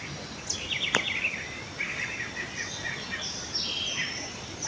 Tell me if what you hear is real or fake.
real